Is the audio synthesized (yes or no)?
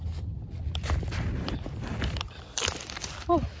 no